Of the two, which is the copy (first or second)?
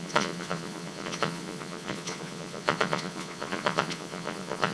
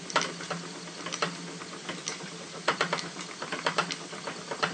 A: first